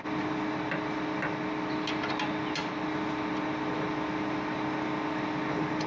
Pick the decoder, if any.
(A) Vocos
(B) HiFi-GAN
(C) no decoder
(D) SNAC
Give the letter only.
C